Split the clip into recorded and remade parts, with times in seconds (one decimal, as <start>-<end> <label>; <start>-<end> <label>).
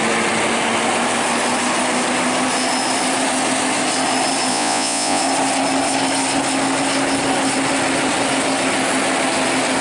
0.0-4.5 recorded; 4.5-5.2 remade; 5.2-9.8 recorded